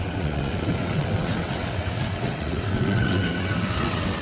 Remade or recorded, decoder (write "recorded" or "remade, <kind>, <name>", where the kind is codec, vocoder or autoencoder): remade, vocoder, WaveNeXt